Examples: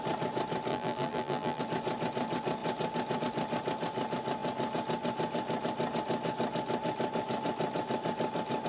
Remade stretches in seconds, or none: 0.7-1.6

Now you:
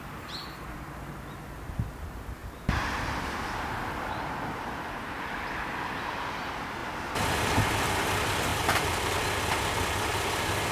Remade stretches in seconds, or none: 0.0-0.4; 1.2-10.7

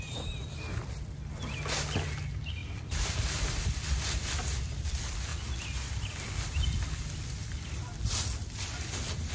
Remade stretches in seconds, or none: none

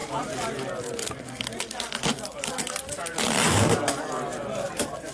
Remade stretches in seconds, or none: 0.0-0.8

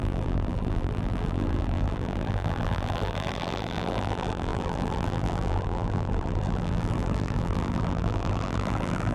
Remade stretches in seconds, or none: 0.0-9.1

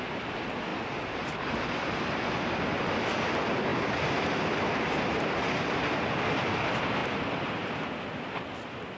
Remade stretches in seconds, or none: 0.7-2.6; 3.7-5.6; 7.0-7.7

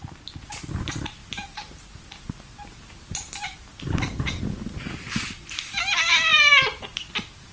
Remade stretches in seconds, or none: 6.3-7.1

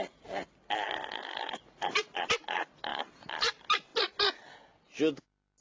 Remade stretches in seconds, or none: 2.9-3.5